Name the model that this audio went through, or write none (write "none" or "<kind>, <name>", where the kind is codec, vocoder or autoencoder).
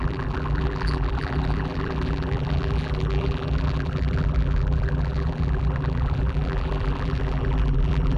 vocoder, BigVGAN v2